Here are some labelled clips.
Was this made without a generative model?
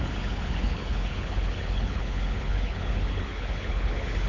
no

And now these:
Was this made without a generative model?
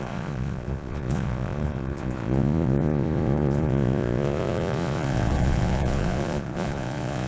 no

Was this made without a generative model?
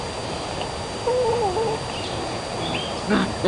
yes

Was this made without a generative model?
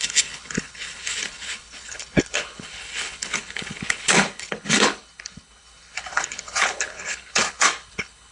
no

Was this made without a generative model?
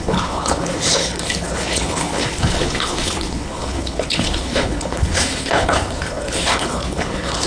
no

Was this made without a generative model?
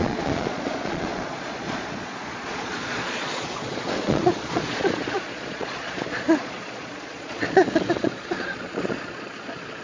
no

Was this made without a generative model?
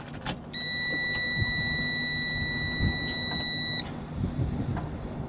yes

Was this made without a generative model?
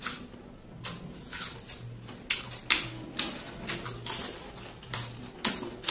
yes